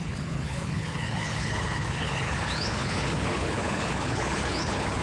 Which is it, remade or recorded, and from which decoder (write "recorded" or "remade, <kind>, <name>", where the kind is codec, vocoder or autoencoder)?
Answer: remade, codec, HILCodec